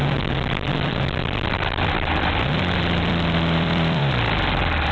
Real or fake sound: fake